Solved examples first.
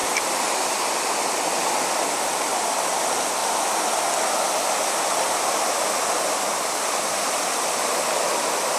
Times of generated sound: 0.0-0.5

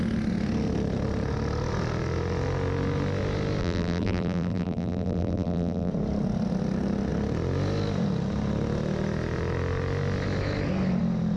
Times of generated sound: 3.6-5.9

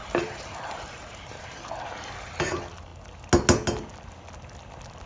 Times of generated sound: 0.0-1.4

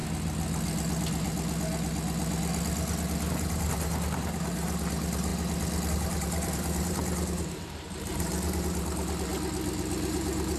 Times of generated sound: 3.3-5.3; 5.9-9.3; 10.1-10.6